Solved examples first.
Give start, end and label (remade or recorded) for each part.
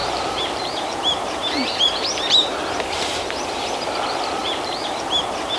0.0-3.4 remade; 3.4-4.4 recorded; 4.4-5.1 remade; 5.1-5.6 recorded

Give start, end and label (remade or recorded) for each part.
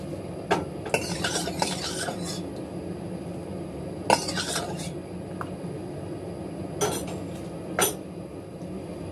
0.0-9.1 recorded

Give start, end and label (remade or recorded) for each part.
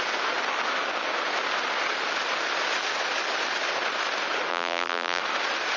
0.0-4.5 recorded; 4.5-5.2 remade; 5.2-5.8 recorded